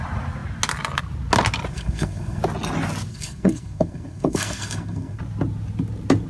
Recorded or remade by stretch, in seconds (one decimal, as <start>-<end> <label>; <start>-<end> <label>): 0.0-1.7 recorded; 1.7-2.4 remade; 2.4-3.1 recorded; 3.1-5.2 remade; 5.2-6.3 recorded